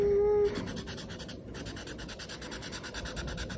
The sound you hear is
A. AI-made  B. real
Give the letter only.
B